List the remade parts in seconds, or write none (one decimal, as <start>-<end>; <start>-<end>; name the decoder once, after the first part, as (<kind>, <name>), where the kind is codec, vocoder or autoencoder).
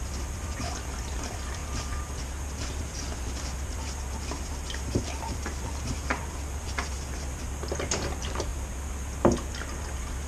0.0-1.6 (vocoder, BigVGAN v2); 2.8-8.5